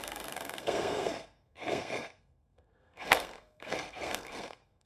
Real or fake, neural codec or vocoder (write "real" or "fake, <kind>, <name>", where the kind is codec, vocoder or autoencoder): fake, codec, SNAC